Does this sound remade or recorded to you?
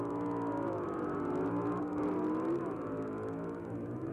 recorded